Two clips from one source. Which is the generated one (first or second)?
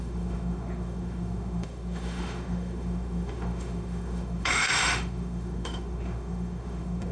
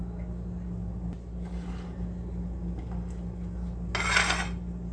first